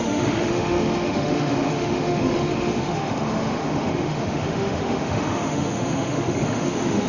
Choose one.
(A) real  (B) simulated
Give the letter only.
B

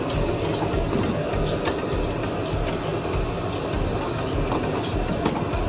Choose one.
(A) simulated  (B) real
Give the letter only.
B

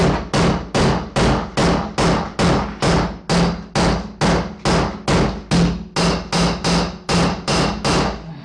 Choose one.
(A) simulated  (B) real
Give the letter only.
B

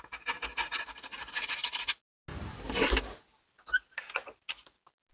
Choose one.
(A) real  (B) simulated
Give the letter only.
A